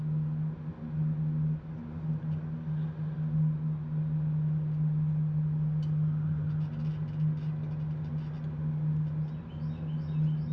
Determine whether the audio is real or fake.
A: real